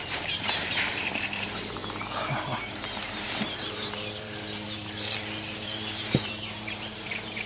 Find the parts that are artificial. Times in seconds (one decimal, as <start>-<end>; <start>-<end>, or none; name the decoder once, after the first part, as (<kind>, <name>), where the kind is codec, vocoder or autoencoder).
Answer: 0.0-1.8 (vocoder, BigVGAN v2); 2.7-7.5